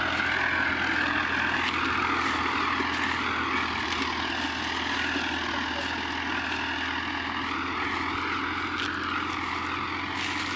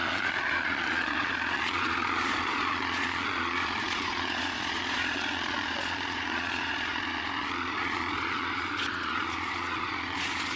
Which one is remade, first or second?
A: second